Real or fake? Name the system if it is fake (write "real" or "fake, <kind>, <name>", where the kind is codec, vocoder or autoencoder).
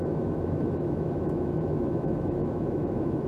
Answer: fake, autoencoder, DAC-VAE